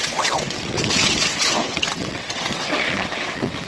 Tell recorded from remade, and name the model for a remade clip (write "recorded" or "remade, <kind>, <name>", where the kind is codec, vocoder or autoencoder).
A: remade, vocoder, WaveNeXt